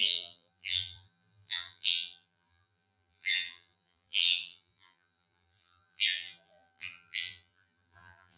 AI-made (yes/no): yes